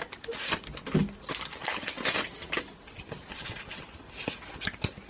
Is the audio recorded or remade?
recorded